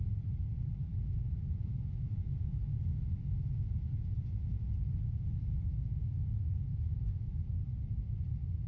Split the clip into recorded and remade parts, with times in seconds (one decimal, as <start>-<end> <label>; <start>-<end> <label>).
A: 0.0-0.9 recorded; 0.9-3.9 remade; 3.9-6.7 recorded; 6.7-7.4 remade; 7.4-8.7 recorded